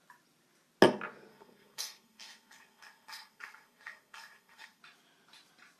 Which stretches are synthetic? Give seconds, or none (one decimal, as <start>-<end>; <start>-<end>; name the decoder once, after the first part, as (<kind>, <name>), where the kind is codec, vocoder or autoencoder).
1.3-4.8 (codec, SNAC)